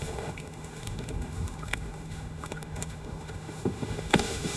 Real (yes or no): no